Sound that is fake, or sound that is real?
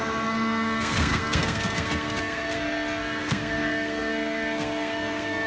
fake